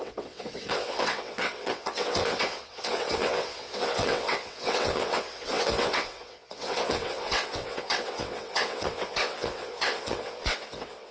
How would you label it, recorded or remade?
remade